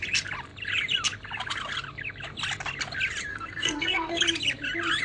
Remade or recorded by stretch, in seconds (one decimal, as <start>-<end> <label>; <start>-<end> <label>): 0.0-3.3 recorded; 3.3-4.2 remade; 4.2-5.0 recorded